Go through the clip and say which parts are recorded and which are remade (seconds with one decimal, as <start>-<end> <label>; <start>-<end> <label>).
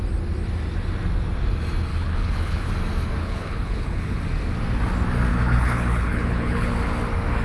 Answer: 0.0-1.9 recorded; 1.9-2.7 remade; 2.7-3.2 recorded; 3.2-4.2 remade; 4.2-5.3 recorded; 5.3-6.7 remade; 6.7-7.4 recorded